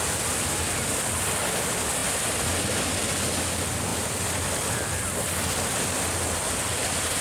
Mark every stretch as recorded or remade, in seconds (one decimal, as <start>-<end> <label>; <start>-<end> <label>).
0.0-7.2 recorded